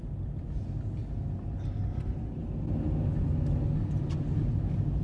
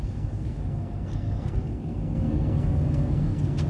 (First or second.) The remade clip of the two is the second